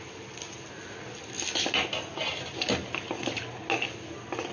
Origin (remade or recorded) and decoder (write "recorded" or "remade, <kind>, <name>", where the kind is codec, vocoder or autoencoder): recorded